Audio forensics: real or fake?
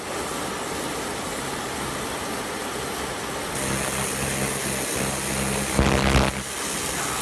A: real